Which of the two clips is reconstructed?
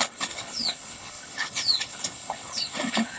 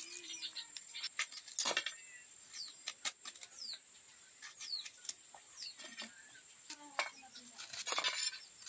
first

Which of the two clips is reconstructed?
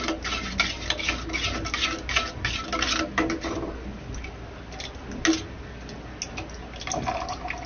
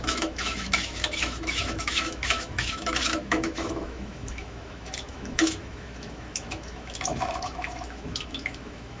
second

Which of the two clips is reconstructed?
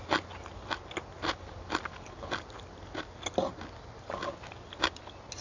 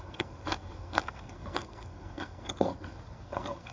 second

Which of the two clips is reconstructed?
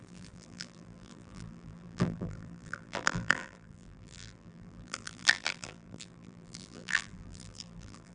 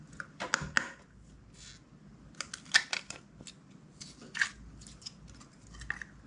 first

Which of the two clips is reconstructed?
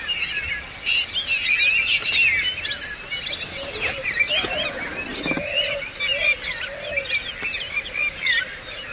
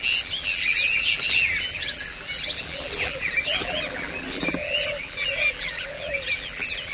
second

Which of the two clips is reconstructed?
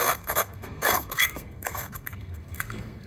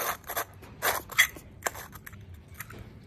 first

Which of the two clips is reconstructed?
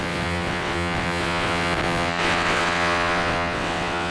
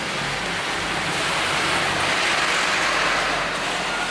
first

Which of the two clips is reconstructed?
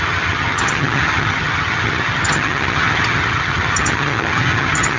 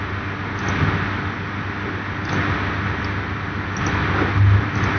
first